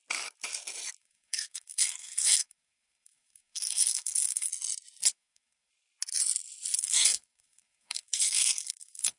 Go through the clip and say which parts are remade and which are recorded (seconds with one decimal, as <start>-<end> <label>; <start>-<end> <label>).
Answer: 0.0-1.0 recorded; 1.0-4.5 remade; 4.5-5.1 recorded; 5.1-5.7 remade; 5.7-6.8 recorded; 6.8-9.2 remade